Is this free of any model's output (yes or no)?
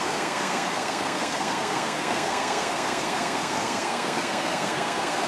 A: no